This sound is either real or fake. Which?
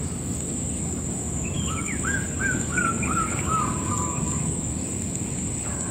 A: fake